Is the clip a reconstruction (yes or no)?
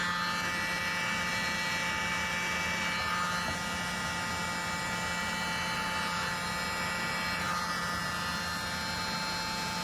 no